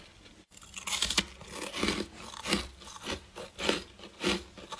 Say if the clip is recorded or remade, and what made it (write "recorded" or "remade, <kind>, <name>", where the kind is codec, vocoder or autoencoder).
recorded